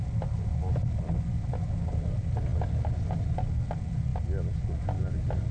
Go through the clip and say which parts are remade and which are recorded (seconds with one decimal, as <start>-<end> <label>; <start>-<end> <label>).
0.0-5.5 recorded